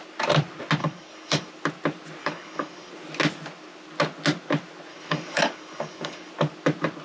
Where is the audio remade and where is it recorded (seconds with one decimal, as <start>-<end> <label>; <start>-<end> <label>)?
0.0-0.8 recorded; 0.8-1.5 remade; 1.5-2.2 recorded; 2.2-2.9 remade; 2.9-4.9 recorded; 4.9-6.3 remade; 6.3-7.0 recorded